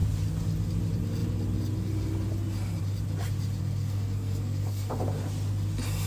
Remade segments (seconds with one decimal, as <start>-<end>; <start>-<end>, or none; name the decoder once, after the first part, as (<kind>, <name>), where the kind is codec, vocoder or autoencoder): 3.6-4.9 (codec, SNAC)